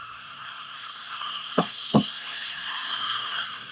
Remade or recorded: remade